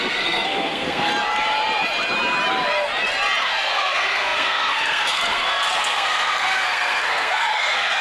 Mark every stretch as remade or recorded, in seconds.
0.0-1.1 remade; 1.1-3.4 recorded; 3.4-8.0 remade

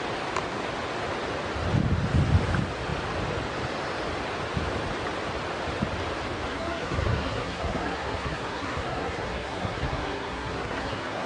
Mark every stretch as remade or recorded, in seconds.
0.0-6.5 recorded; 6.5-11.3 remade

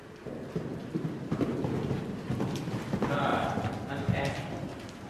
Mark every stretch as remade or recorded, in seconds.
0.0-0.8 recorded; 0.8-1.6 remade; 1.6-5.1 recorded

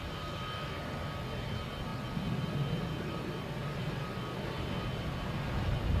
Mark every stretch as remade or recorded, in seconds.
0.0-6.0 recorded